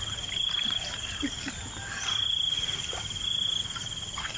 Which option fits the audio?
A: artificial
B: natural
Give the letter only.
B